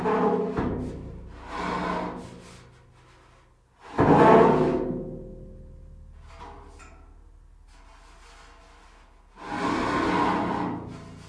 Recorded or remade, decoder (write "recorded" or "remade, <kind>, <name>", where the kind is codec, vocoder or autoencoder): recorded